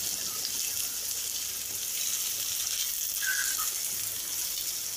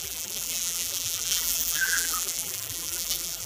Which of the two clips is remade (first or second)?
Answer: second